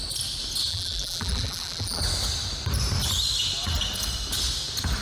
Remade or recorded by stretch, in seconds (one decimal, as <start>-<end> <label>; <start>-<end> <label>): 0.0-0.7 recorded; 0.7-2.0 remade; 2.0-5.0 recorded